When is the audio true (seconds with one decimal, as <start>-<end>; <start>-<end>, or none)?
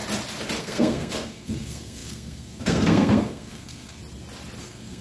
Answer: 0.0-0.6; 4.0-4.6